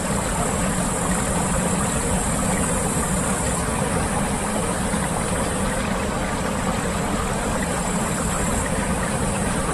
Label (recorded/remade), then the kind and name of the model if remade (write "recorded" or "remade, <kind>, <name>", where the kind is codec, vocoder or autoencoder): recorded